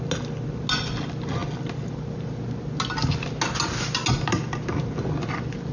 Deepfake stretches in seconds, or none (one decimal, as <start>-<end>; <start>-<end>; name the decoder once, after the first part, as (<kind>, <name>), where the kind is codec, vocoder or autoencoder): none